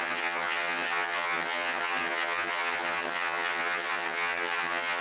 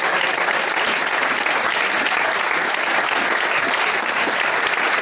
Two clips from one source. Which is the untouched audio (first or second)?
second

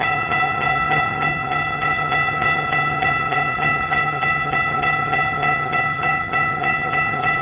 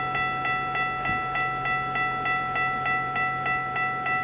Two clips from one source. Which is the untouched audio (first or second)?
second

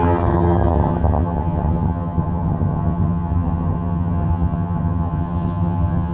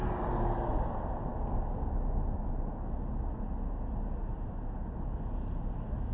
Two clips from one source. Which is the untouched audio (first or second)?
second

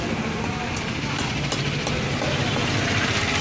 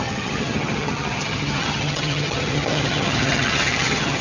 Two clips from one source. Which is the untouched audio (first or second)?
first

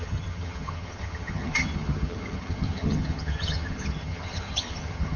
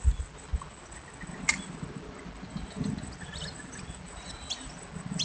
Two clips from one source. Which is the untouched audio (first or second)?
second